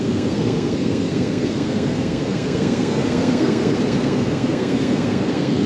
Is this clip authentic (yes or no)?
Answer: no